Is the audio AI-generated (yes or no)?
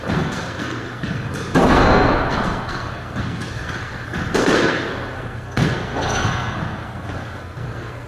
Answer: yes